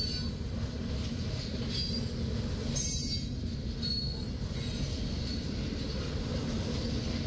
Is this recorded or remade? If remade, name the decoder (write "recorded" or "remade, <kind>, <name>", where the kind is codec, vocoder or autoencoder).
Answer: recorded